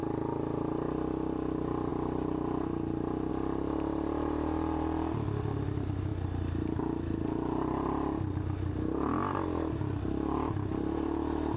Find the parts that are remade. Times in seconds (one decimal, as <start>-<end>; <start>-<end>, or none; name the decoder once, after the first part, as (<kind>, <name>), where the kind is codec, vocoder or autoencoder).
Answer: none

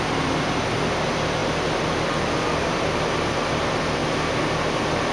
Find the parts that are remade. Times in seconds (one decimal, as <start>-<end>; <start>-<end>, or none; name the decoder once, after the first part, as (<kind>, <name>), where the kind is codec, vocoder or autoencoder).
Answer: none

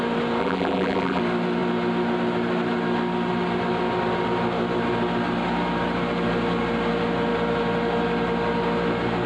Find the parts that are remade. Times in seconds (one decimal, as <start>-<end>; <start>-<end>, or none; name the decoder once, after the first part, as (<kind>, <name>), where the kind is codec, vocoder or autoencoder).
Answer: 0.4-1.2 (vocoder, BigVGAN v2)

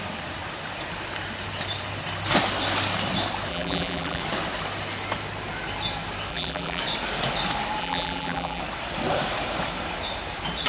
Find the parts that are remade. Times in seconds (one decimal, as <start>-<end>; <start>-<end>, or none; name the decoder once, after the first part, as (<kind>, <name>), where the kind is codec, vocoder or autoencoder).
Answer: 3.5-4.2 (vocoder, BigVGAN v2); 6.3-6.8; 7.8-8.6

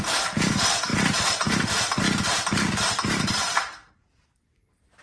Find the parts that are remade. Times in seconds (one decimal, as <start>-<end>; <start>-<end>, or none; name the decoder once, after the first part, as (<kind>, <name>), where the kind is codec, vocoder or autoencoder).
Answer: 0.9-3.9 (vocoder, BigVGAN v2)

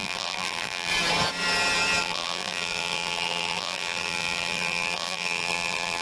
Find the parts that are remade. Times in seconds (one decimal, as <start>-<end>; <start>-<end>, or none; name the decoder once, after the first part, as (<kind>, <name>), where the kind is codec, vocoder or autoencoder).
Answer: 0.0-0.9 (vocoder, BigVGAN v2); 2.0-6.0